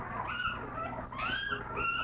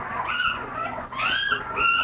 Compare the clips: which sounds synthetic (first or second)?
second